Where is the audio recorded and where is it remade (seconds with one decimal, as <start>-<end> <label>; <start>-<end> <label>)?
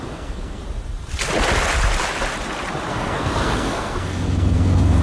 0.0-0.6 remade; 0.6-2.9 recorded; 2.9-5.0 remade